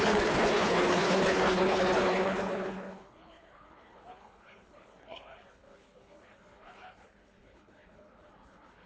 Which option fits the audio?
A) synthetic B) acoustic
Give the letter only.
A